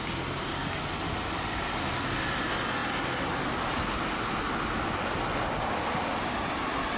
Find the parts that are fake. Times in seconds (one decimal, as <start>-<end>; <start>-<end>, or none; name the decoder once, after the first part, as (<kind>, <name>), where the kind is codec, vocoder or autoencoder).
none